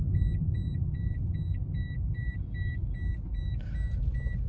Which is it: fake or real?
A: real